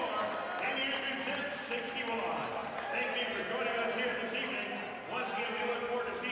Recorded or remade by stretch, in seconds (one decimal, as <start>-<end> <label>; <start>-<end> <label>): 0.0-6.3 recorded